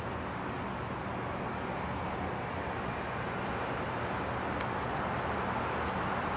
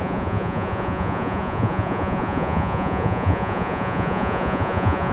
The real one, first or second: first